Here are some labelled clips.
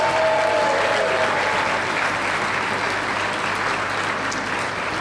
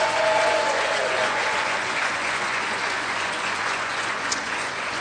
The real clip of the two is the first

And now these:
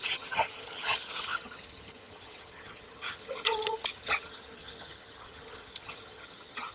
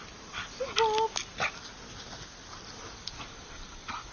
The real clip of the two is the second